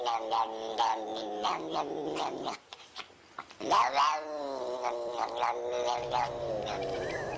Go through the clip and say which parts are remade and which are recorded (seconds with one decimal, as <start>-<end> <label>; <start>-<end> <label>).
0.0-1.1 recorded; 1.1-3.0 remade; 3.0-6.0 recorded; 6.0-7.4 remade